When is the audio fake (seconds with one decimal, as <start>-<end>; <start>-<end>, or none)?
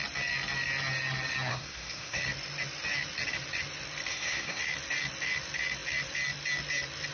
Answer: 1.5-2.2; 4.1-4.6